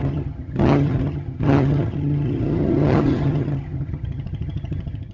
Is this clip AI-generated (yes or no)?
yes